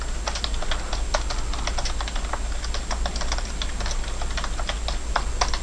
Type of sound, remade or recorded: recorded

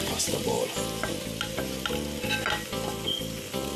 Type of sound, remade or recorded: recorded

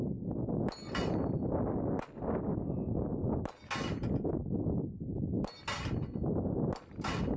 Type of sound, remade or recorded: recorded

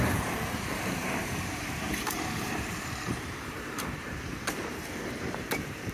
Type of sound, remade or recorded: remade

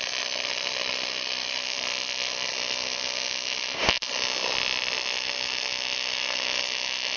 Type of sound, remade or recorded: recorded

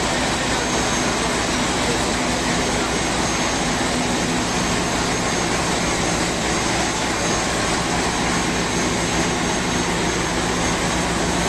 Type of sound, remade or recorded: recorded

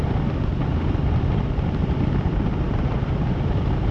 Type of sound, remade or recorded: remade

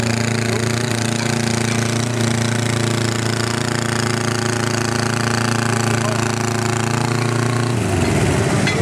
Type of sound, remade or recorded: recorded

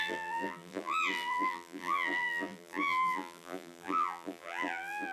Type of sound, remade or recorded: remade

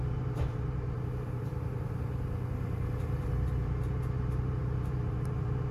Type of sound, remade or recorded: remade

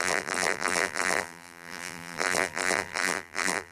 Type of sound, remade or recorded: remade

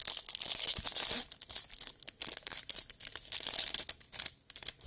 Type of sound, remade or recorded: recorded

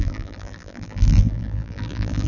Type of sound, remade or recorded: remade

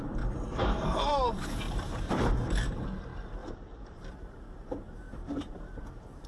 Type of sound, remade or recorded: remade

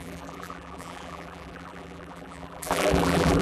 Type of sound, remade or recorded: remade